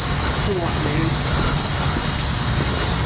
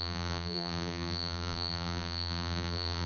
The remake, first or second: second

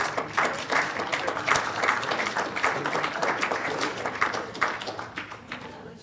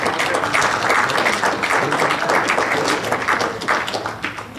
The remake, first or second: first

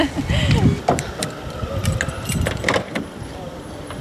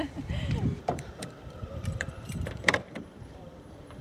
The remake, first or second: second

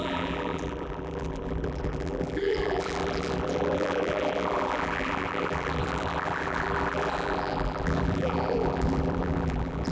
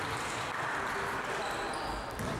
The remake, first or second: first